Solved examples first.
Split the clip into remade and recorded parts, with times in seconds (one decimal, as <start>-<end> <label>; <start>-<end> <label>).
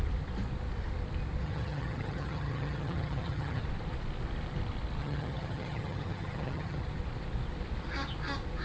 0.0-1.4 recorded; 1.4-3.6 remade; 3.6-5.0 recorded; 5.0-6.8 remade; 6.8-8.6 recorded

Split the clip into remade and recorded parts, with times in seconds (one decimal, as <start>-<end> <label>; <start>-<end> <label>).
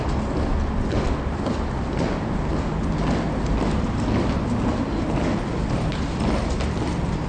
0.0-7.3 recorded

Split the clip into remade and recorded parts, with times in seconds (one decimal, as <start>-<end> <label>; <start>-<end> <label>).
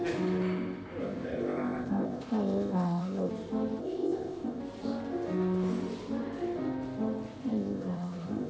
0.0-1.0 recorded; 1.0-3.3 remade; 3.3-3.8 recorded; 3.8-4.6 remade; 4.6-7.4 recorded; 7.4-8.5 remade